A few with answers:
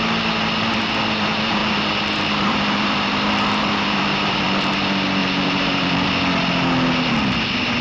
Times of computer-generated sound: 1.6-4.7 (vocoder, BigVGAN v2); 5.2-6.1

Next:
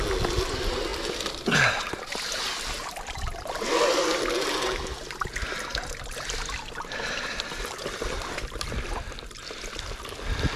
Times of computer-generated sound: none

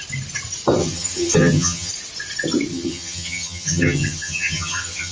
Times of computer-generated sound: 0.8-1.9 (vocoder, HiFi-GAN); 2.7-5.1

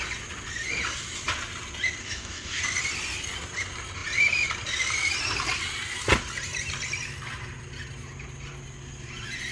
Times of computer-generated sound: 2.0-2.6 (codec, DAC)

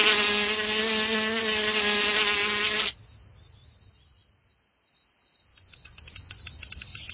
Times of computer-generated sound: 5.5-6.4 (vocoder, Vocos)

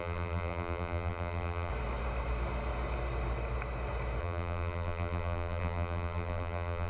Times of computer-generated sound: 0.0-1.7 (vocoder, BigVGAN v2); 4.2-6.9

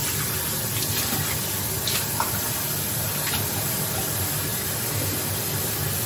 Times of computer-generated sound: 3.5-4.5 (vocoder, BigVGAN v2); 5.3-6.1

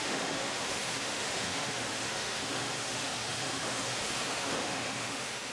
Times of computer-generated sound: 0.0-5.5 (autoencoder, DAC-VAE)